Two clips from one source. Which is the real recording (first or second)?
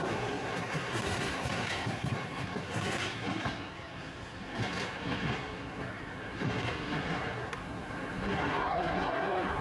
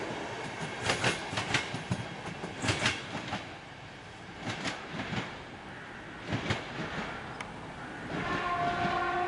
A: second